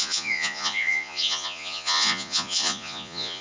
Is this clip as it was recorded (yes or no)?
no